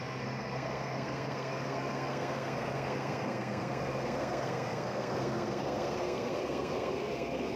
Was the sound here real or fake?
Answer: fake